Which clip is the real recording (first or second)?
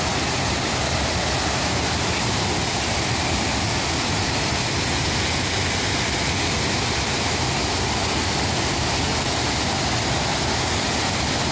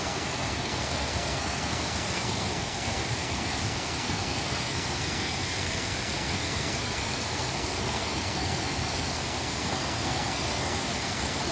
first